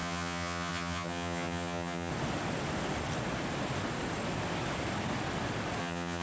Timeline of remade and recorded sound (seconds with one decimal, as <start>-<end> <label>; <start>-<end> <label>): 0.0-2.1 remade; 2.1-5.8 recorded; 5.8-6.2 remade